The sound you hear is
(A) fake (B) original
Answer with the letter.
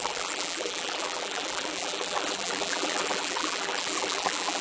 A